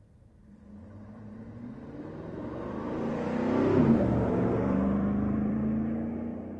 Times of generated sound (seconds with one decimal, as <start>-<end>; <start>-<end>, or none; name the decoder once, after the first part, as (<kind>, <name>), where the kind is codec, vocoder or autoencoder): 0.0-3.1 (vocoder, BigVGAN v2); 3.8-5.6